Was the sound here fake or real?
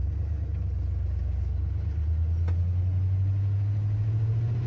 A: real